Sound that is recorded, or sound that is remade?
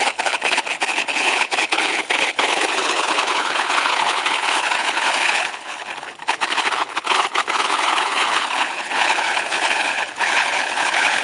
remade